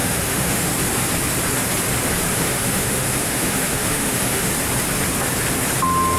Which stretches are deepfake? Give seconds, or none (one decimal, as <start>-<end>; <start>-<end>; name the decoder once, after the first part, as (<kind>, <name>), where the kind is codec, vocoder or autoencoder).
0.0-0.7 (autoencoder, DAC-VAE); 2.3-4.5